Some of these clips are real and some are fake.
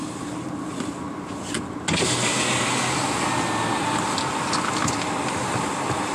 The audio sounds real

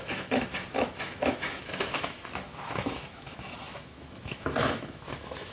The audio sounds fake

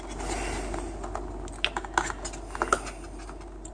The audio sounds real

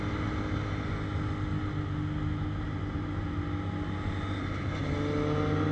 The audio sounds real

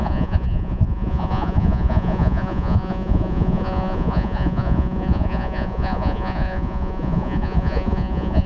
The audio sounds fake